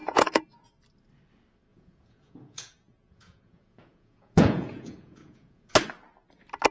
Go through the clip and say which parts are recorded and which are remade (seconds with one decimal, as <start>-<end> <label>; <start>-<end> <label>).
0.0-0.7 remade; 0.7-1.7 recorded; 1.7-5.7 remade; 5.7-6.7 recorded